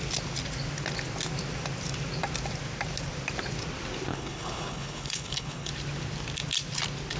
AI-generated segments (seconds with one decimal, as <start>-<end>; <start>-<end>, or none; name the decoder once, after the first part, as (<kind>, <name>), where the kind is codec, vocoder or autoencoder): 4.1-5.7 (codec, HILCodec)